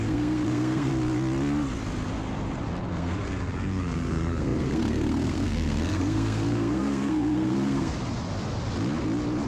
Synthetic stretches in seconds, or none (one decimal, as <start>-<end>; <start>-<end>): 0.0-0.9; 2.9-7.9

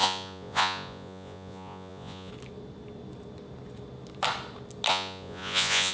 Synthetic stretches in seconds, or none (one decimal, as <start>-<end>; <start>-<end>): 0.0-2.3; 4.9-5.9

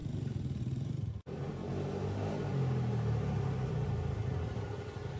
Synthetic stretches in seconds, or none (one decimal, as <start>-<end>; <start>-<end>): 0.0-1.1